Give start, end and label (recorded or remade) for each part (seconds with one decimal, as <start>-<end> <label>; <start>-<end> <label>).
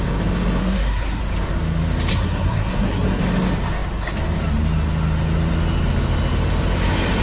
0.0-0.6 recorded; 0.6-1.2 remade; 1.2-2.1 recorded; 2.1-3.2 remade; 3.2-7.2 recorded